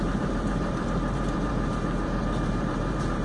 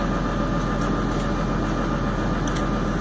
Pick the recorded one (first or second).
second